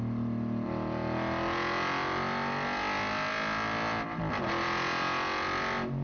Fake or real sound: real